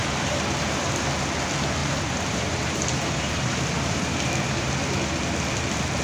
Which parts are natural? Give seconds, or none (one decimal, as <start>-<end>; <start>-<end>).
0.0-1.8; 4.7-6.0